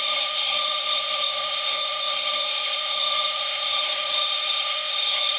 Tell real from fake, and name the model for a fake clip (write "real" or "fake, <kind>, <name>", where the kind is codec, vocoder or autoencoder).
fake, codec, SNAC